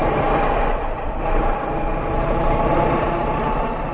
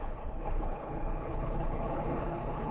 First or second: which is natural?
first